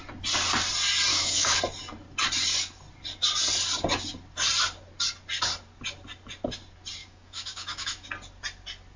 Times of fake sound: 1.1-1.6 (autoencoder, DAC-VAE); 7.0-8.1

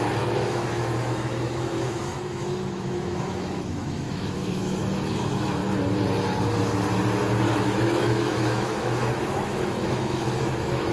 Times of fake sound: 0.0-5.6 (autoencoder, DAC-VAE); 7.4-10.9

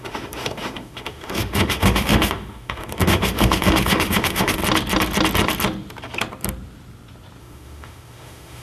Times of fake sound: 0.0-4.6 (autoencoder, DAC-VAE); 7.4-8.6

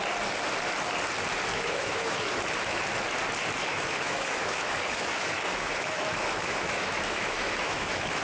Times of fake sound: 1.5-2.3 (autoencoder, DAC-VAE); 3.7-8.2